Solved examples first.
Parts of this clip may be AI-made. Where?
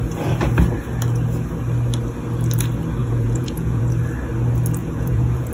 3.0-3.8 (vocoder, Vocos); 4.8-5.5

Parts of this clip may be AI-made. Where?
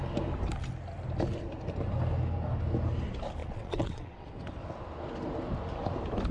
3.4-4.3 (vocoder, WaveNeXt)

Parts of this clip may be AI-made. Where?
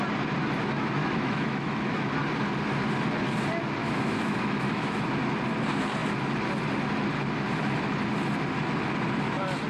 1.0-2.1 (autoencoder, DAC-VAE); 3.8-5.0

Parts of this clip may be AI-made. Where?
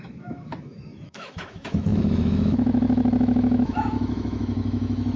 0.0-5.2 (autoencoder, DAC-VAE)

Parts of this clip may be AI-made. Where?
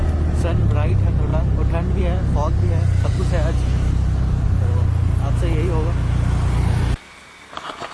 none